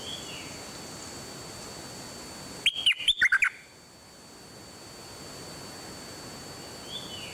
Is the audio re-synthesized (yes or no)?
no